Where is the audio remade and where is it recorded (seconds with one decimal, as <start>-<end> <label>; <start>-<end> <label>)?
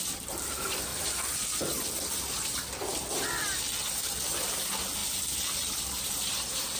0.0-6.8 recorded